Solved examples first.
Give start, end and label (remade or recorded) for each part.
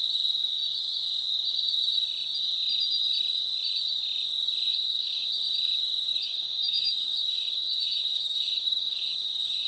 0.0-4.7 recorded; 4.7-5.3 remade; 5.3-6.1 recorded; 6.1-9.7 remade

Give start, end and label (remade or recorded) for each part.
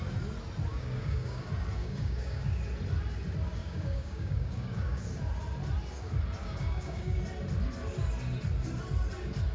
0.0-0.7 recorded; 0.7-1.4 remade; 1.4-1.8 recorded; 1.8-2.6 remade; 2.6-3.6 recorded; 3.6-5.0 remade; 5.0-6.4 recorded; 6.4-7.2 remade; 7.2-9.5 recorded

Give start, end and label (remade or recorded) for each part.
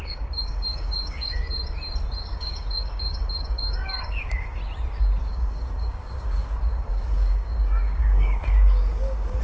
0.0-1.6 remade; 1.6-2.2 recorded; 2.2-4.6 remade; 4.6-5.2 recorded; 5.2-9.4 remade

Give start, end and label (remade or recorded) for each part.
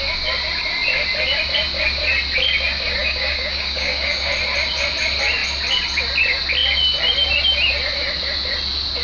0.0-3.0 recorded; 3.0-4.3 remade; 4.3-9.0 recorded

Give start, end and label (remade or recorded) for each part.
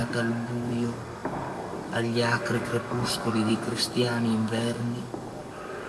0.0-5.9 remade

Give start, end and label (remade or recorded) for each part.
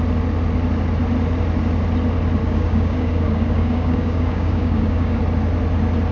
0.0-2.4 recorded; 2.4-5.2 remade; 5.2-6.1 recorded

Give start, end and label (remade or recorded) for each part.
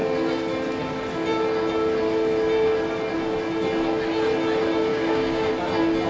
0.0-4.9 recorded; 4.9-5.5 remade; 5.5-6.1 recorded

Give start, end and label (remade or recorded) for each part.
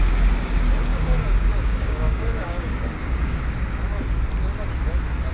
0.0-0.9 recorded; 0.9-3.4 remade; 3.4-5.3 recorded